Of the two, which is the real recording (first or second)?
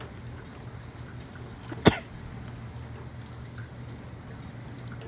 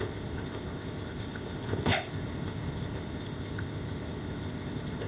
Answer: first